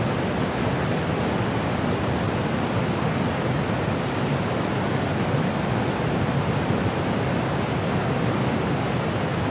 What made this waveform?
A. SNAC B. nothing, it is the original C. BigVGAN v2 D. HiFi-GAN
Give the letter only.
B